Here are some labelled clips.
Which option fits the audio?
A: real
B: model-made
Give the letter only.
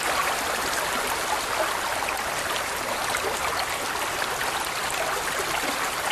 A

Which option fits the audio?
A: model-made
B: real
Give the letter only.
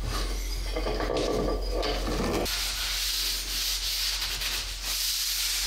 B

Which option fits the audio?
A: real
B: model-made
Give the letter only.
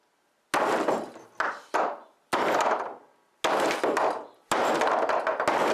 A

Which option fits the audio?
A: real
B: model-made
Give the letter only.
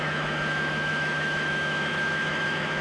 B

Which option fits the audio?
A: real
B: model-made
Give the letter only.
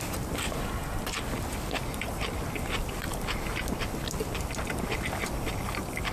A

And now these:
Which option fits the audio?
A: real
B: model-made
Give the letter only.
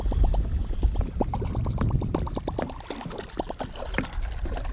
A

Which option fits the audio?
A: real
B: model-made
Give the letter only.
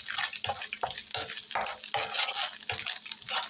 A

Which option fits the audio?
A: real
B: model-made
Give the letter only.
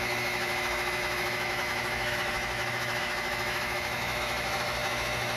B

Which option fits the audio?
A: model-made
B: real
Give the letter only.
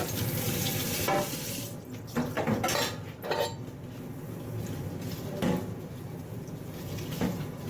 B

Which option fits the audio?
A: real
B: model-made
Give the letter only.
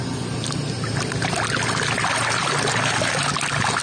A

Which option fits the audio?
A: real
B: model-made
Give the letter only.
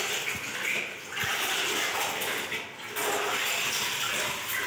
A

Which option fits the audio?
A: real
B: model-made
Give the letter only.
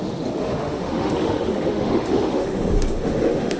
B